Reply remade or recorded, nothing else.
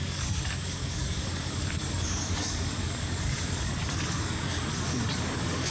remade